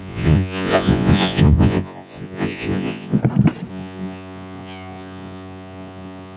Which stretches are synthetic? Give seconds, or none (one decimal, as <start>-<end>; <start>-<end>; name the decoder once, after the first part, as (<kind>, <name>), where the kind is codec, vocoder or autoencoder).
0.0-3.2 (vocoder, Vocos); 3.7-6.4